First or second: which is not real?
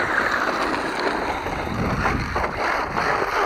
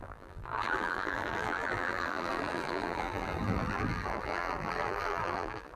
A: second